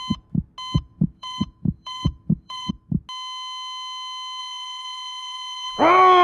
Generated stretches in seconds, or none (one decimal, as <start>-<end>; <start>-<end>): 0.9-2.7; 4.4-5.7